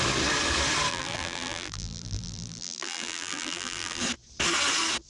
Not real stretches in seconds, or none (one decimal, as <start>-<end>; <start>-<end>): 0.9-4.0